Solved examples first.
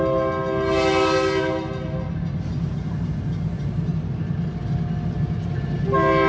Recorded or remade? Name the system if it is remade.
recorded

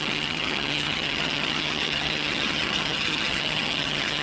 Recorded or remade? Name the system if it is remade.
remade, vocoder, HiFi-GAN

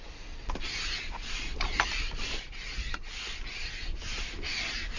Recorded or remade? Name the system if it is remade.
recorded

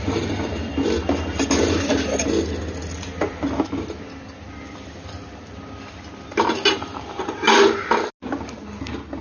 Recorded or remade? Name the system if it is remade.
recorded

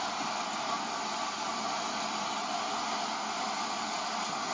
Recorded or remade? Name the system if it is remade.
recorded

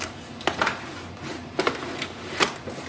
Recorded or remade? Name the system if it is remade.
recorded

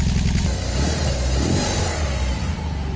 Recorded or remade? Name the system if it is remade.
recorded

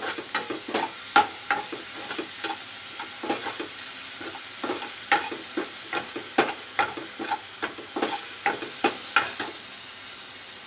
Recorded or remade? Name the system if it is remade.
recorded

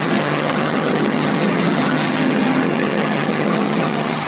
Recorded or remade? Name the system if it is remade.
remade, vocoder, HiFi-GAN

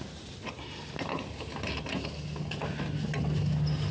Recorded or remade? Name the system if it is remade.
recorded